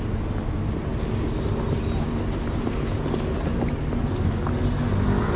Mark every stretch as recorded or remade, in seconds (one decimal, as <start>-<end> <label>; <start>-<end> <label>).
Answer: 0.0-5.4 recorded